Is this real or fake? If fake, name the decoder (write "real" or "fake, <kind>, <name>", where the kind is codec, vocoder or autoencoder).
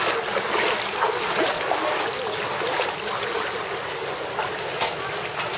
real